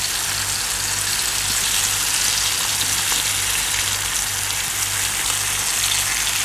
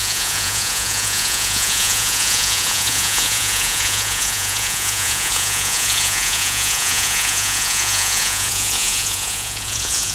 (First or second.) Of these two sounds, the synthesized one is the second